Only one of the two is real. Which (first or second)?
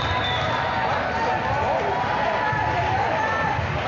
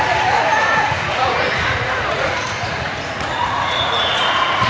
first